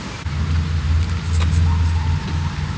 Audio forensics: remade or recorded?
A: recorded